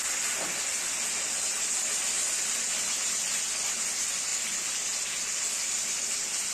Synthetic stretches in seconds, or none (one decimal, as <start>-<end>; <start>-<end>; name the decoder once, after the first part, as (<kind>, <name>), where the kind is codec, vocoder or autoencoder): none